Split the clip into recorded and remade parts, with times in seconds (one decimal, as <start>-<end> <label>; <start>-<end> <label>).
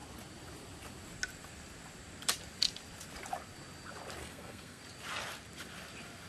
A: 0.0-4.2 recorded; 4.2-4.8 remade; 4.8-6.3 recorded